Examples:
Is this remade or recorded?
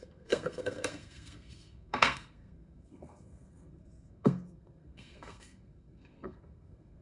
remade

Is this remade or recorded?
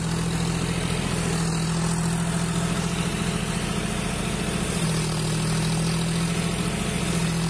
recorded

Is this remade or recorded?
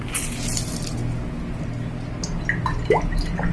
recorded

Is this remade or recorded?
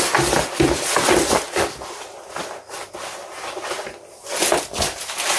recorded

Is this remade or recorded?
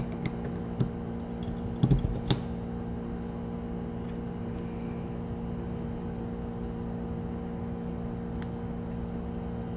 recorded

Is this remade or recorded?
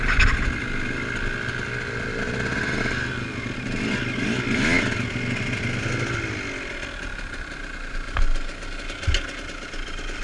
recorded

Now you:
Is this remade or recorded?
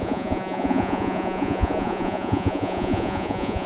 remade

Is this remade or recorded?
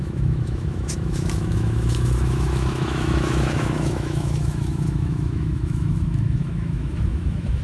remade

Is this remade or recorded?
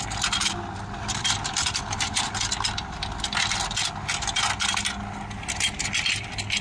recorded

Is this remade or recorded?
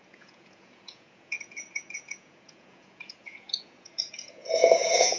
remade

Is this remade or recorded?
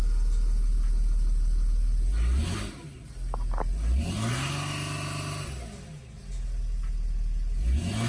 recorded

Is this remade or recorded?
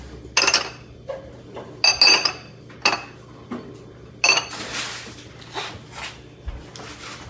recorded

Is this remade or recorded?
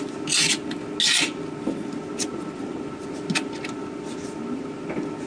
recorded